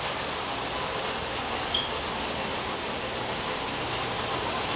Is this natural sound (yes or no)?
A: yes